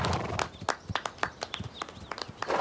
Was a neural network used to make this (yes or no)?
no